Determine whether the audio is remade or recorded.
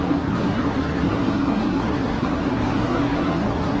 remade